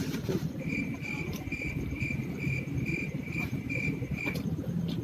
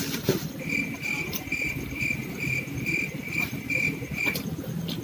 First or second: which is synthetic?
first